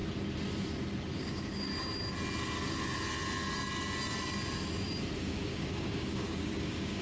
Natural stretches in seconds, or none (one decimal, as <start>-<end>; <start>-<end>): 0.0-1.1; 1.7-5.2